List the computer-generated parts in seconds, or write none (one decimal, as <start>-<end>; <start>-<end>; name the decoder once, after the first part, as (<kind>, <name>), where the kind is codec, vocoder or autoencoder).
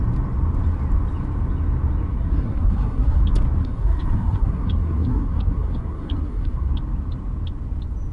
2.1-3.2 (codec, SNAC); 3.6-6.7